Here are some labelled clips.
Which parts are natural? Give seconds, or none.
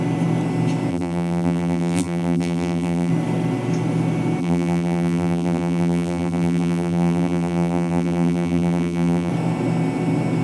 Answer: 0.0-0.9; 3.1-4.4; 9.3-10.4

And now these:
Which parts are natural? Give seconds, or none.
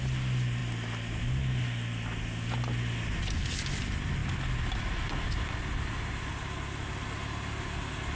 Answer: 0.0-8.2